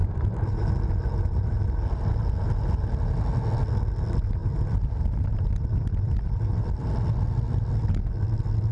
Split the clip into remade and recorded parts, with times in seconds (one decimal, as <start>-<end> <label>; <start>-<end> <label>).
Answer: 0.0-0.7 remade; 0.7-4.4 recorded; 4.4-6.9 remade; 6.9-8.7 recorded